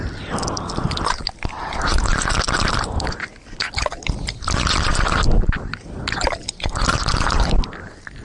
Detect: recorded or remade recorded